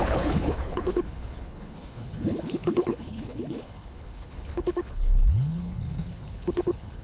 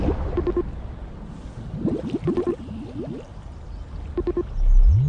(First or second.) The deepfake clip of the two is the first